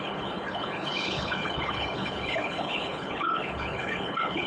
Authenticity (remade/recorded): remade